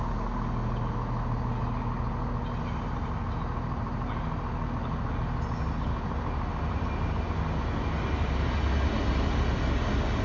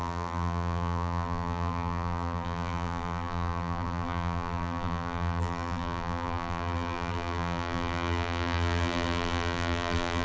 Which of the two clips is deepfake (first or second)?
second